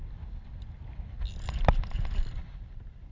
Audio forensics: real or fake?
real